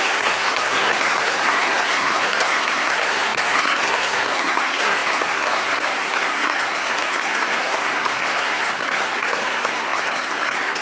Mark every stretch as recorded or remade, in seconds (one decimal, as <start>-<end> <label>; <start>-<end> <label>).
0.0-10.8 remade